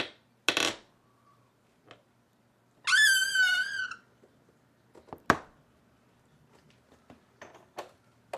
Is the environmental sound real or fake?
real